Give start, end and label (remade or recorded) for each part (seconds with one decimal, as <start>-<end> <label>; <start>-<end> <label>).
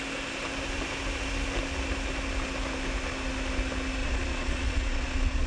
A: 0.0-4.0 recorded; 4.0-5.5 remade